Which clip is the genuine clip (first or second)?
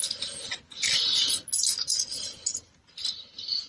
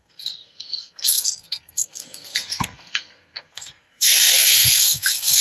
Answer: first